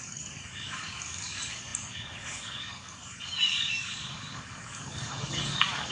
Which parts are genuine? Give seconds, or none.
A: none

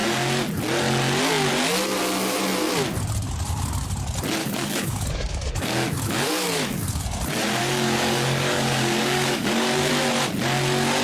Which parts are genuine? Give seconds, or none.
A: 0.0-4.4; 7.0-7.6; 9.9-11.0

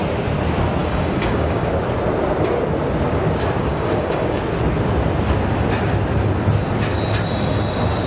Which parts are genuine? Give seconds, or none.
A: 0.0-0.8; 1.7-3.6; 4.4-8.1